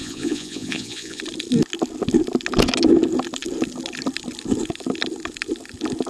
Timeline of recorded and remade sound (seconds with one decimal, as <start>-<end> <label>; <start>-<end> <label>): 0.0-1.2 remade; 1.2-6.1 recorded